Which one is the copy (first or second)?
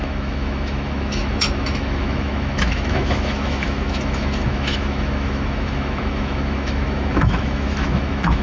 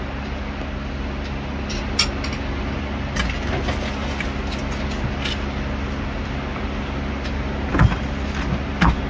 first